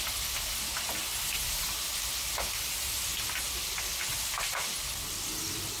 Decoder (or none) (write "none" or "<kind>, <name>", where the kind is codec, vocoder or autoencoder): none